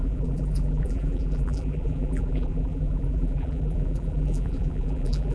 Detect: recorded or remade remade